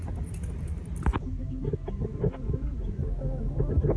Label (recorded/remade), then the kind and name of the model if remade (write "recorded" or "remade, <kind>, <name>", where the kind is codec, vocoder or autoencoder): recorded